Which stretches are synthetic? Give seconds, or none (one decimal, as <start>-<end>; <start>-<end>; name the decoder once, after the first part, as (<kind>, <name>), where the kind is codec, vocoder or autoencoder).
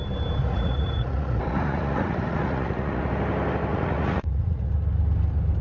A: 0.4-3.1 (vocoder, Vocos); 3.7-4.7